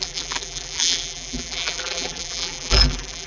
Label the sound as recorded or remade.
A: remade